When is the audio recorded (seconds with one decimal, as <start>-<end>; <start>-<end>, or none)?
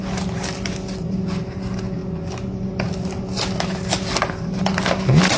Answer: 0.0-5.4